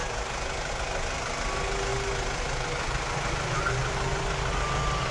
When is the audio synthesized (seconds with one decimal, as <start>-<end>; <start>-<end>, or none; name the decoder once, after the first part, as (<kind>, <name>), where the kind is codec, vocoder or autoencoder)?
none